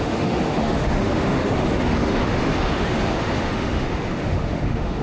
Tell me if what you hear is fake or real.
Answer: fake